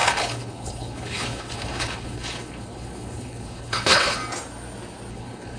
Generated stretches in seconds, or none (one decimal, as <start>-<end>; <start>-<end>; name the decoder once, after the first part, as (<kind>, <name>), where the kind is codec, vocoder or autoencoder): 0.0-4.2 (codec, HILCodec); 5.1-5.6